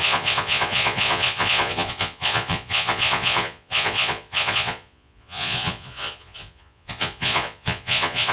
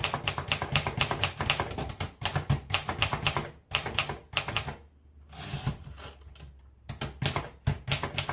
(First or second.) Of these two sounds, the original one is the second